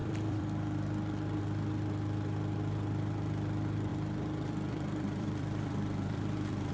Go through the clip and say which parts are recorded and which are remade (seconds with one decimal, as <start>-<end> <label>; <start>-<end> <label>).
0.0-1.4 remade; 1.4-3.9 recorded; 3.9-6.7 remade